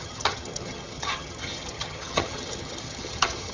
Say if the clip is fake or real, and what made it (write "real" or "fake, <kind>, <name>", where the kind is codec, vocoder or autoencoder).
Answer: fake, vocoder, HiFi-GAN